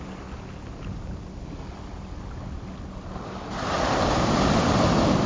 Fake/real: real